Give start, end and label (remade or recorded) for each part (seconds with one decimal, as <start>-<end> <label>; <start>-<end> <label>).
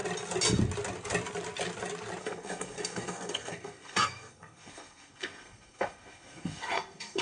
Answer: 0.0-2.2 recorded; 2.2-7.2 remade